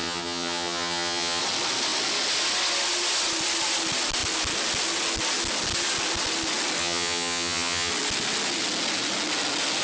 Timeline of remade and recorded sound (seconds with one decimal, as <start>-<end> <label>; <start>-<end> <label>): 0.0-1.4 remade; 1.4-6.8 recorded; 6.8-7.9 remade; 7.9-9.8 recorded